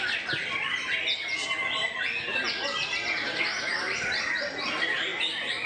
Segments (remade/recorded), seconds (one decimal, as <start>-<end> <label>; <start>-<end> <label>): 0.0-3.6 recorded; 3.6-4.3 remade; 4.3-5.7 recorded

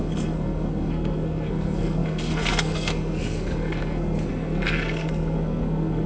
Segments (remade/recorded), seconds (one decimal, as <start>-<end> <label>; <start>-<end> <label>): 0.0-6.1 remade

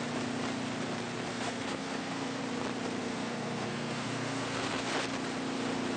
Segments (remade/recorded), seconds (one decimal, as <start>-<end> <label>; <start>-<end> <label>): 0.0-1.3 recorded; 1.3-2.4 remade; 2.4-3.0 recorded; 3.0-4.9 remade; 4.9-6.0 recorded